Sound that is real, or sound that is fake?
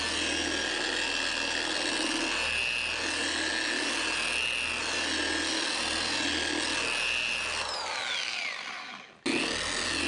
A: real